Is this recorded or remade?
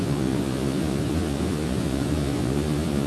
remade